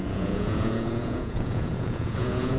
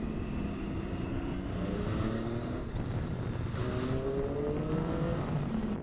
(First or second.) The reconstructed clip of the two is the first